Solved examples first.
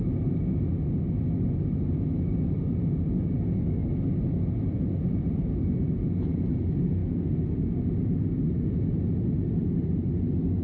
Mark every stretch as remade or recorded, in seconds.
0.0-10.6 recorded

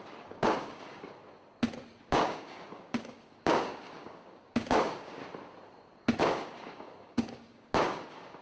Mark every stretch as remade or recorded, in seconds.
0.0-1.2 remade; 1.2-2.1 recorded; 2.1-5.2 remade; 5.2-6.2 recorded; 6.2-8.4 remade

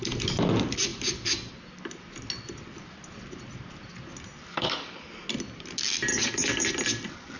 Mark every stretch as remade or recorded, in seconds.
0.0-4.5 recorded; 4.5-5.1 remade; 5.1-6.1 recorded; 6.1-6.7 remade; 6.7-7.4 recorded

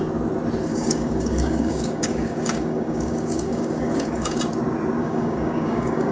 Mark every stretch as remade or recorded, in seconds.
0.0-0.7 recorded; 0.7-4.4 remade; 4.4-5.0 recorded; 5.0-6.1 remade

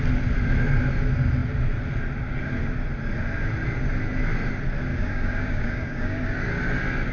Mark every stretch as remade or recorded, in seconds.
0.0-4.9 recorded; 4.9-6.2 remade; 6.2-7.1 recorded